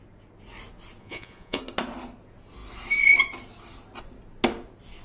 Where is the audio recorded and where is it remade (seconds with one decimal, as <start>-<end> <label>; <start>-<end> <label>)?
0.0-1.0 recorded; 1.0-1.6 remade; 1.6-5.0 recorded

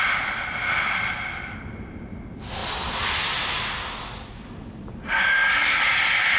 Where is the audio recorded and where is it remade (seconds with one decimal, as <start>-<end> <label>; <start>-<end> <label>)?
0.0-6.4 recorded

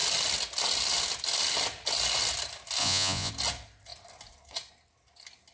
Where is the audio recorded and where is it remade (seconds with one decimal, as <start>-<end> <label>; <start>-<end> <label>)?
0.0-2.8 recorded; 2.8-3.3 remade; 3.3-5.5 recorded

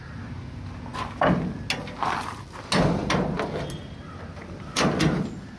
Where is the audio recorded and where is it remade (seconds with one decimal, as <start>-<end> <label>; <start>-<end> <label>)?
0.0-5.6 recorded

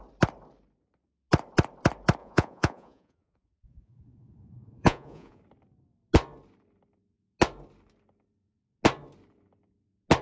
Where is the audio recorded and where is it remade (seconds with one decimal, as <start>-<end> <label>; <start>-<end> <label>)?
0.0-2.2 recorded; 2.2-5.4 remade; 5.4-10.2 recorded

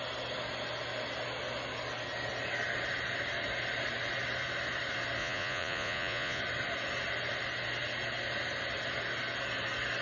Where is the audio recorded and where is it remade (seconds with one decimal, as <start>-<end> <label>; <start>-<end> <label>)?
0.0-5.2 recorded; 5.2-6.4 remade; 6.4-10.0 recorded